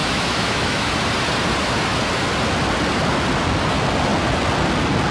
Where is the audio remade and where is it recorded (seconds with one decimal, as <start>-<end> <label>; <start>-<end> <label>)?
0.0-0.9 remade; 0.9-5.1 recorded